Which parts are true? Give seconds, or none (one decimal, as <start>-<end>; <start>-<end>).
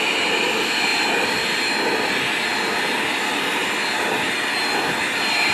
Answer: 0.0-5.5